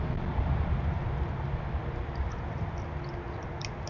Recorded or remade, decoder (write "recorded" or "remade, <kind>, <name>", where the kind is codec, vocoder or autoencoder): recorded